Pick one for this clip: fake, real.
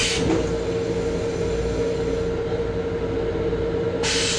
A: real